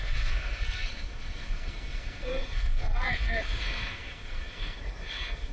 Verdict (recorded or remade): remade